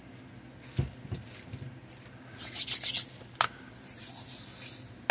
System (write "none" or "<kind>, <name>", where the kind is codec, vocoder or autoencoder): none